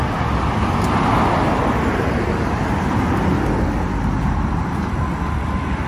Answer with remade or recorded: recorded